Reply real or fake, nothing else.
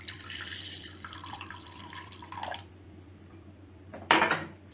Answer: fake